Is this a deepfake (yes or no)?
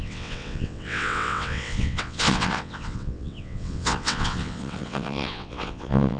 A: yes